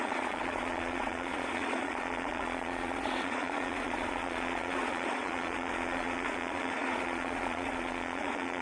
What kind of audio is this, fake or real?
fake